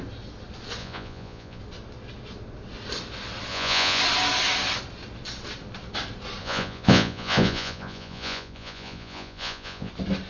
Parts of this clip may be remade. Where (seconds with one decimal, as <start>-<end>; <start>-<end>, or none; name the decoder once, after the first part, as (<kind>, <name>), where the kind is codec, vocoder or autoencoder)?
0.8-1.6 (vocoder, Vocos); 3.5-4.0; 6.4-9.9